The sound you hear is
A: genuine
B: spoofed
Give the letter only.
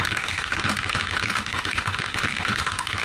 B